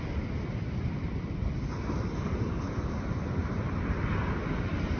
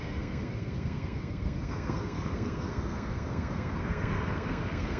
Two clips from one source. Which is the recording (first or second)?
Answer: first